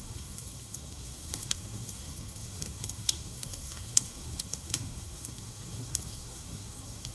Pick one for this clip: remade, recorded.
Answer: remade